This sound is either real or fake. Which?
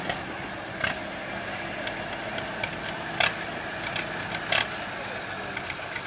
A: real